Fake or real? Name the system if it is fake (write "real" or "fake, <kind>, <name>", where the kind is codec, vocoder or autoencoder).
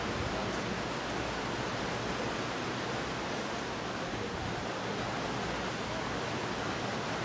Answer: real